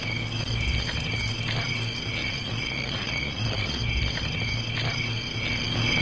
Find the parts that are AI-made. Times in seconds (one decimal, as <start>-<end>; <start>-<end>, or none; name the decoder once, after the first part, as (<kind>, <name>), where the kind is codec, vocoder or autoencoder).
2.2-3.8 (vocoder, Vocos)